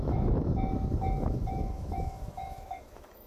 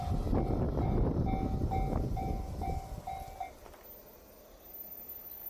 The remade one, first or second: first